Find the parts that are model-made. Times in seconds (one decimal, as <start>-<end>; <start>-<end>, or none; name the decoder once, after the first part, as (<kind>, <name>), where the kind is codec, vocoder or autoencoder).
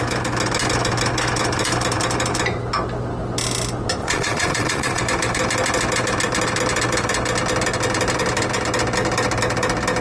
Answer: 4.0-5.0 (vocoder, Vocos)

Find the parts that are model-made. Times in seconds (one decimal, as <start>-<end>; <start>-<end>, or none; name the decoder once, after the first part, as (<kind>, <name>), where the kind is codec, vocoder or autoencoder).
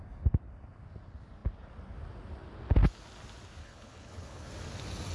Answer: 3.6-4.5 (codec, HILCodec)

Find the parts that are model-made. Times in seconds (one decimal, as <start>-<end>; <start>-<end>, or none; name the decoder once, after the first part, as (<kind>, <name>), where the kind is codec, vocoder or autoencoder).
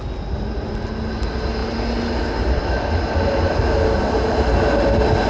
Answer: none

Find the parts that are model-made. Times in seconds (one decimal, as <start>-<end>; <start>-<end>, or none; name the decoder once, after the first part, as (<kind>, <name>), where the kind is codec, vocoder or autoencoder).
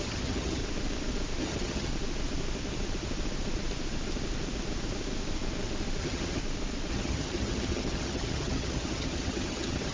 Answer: 0.0-0.6 (vocoder, HiFi-GAN); 1.4-1.9; 6.0-6.4; 6.9-9.9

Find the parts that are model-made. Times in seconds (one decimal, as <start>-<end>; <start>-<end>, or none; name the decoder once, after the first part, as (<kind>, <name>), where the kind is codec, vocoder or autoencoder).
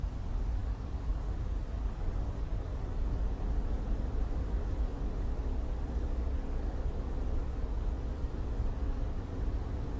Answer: 0.6-3.8 (codec, DAC); 4.6-6.8; 7.4-9.3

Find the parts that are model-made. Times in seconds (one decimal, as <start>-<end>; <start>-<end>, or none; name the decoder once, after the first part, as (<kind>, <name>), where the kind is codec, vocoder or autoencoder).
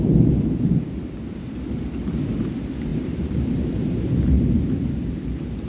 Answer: 0.0-5.7 (vocoder, BigVGAN v2)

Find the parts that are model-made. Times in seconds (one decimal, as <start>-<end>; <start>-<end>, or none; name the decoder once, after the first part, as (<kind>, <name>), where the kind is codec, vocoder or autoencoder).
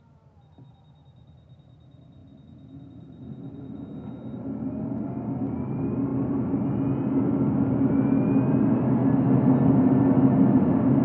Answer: none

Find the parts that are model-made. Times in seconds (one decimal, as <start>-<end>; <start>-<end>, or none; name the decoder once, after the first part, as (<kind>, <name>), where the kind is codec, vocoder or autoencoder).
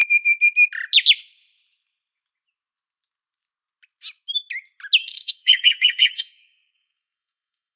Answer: 5.0-7.8 (codec, SNAC)